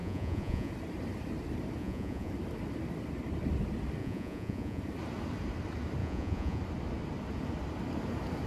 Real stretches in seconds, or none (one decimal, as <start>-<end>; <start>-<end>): 0.7-1.8; 2.3-4.0; 4.8-6.0; 6.6-8.5